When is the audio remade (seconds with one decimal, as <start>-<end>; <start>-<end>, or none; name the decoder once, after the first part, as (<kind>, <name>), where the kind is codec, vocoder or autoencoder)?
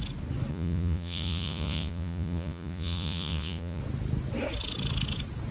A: 0.5-3.8 (vocoder, Vocos)